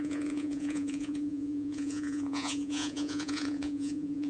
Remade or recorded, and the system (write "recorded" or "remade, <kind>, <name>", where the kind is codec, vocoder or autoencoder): remade, vocoder, Vocos